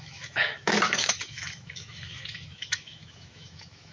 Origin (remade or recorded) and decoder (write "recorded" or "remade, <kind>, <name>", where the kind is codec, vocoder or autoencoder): remade, autoencoder, DAC-VAE